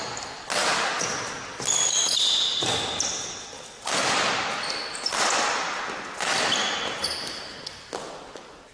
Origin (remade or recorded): recorded